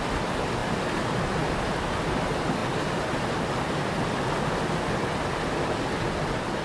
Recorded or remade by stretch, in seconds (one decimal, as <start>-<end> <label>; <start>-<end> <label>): 0.0-6.6 recorded